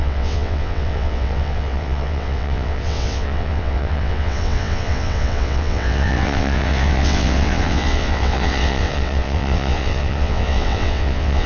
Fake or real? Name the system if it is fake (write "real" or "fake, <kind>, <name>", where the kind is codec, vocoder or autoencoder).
fake, vocoder, WaveNeXt